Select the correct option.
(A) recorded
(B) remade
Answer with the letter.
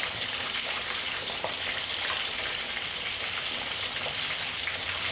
B